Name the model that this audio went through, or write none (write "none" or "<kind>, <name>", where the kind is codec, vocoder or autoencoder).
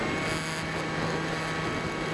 none